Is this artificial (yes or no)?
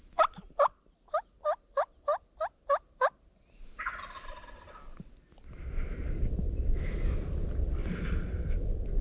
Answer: no